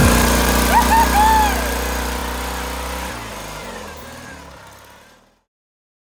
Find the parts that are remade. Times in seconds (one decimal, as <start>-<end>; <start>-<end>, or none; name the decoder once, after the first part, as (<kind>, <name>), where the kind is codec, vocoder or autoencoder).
none